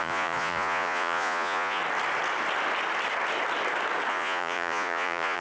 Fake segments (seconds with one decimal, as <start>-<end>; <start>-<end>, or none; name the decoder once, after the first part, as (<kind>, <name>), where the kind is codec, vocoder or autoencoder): 0.0-1.8 (vocoder, Vocos); 4.1-5.4